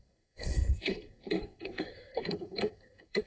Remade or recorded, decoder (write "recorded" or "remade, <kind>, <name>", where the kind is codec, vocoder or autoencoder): remade, codec, SNAC